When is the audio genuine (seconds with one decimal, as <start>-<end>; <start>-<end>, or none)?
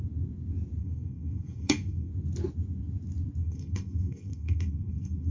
0.0-0.8; 2.1-3.4